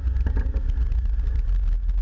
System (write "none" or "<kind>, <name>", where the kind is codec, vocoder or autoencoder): none